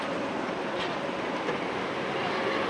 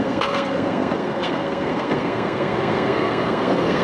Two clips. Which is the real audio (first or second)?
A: first